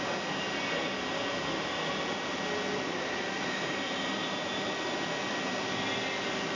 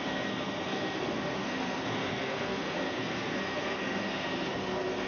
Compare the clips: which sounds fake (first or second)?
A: second